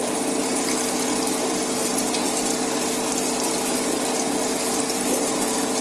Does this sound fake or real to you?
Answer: fake